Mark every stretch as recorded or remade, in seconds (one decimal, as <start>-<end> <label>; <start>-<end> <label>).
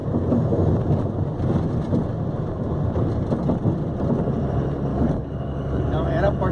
0.0-4.9 recorded; 4.9-5.8 remade; 5.8-6.5 recorded